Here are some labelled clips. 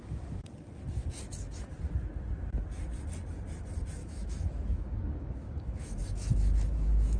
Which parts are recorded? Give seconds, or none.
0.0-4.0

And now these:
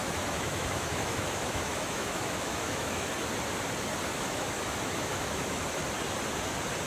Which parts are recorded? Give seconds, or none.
3.1-4.1; 5.5-6.9

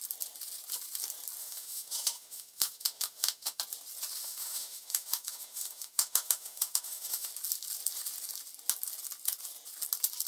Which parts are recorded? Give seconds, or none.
0.0-1.4; 3.6-4.2; 7.3-10.3

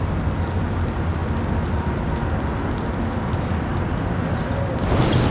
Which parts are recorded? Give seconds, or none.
0.0-5.3